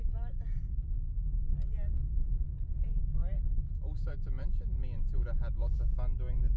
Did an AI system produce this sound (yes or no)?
no